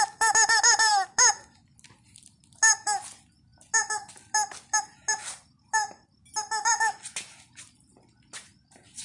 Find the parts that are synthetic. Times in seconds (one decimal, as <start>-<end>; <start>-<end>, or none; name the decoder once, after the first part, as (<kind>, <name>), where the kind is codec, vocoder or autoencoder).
none